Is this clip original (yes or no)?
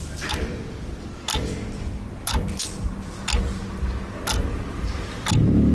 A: yes